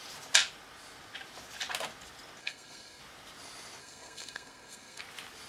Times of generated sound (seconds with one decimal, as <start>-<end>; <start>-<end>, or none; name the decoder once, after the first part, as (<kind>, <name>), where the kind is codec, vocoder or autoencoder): 2.4-3.0 (codec, SNAC); 3.8-5.0